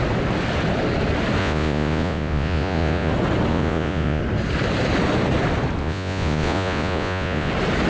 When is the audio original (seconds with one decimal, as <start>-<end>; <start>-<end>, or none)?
0.0-1.4; 3.1-3.5; 4.2-5.8; 7.5-7.9